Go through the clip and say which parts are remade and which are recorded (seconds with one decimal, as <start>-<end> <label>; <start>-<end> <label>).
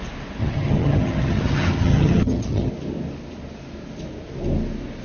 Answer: 0.0-0.4 recorded; 0.4-2.7 remade; 2.7-5.0 recorded